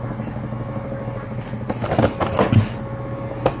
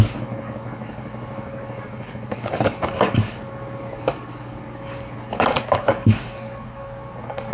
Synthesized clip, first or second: second